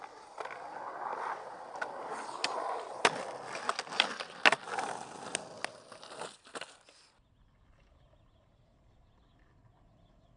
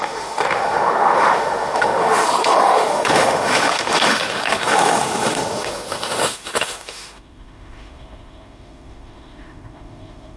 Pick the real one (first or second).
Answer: first